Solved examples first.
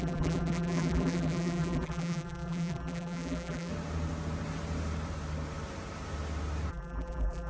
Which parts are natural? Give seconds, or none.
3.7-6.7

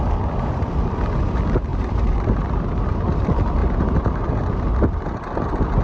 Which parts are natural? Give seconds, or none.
0.0-1.7; 2.8-3.6; 4.3-5.8